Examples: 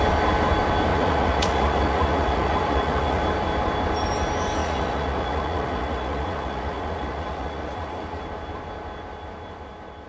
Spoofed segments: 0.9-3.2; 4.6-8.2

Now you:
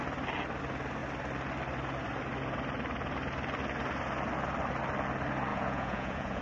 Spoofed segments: 5.5-6.4

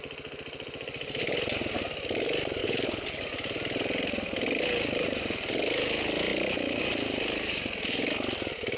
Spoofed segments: 2.6-3.2

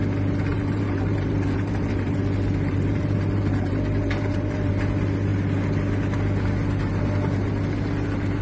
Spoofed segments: 0.5-4.7